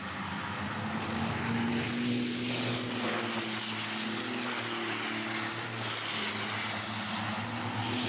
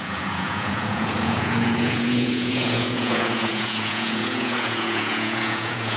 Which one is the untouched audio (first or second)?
first